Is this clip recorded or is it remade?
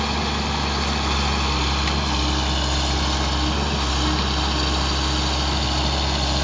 recorded